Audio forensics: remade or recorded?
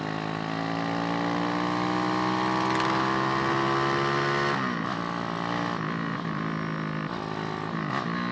recorded